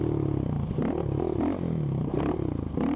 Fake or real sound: real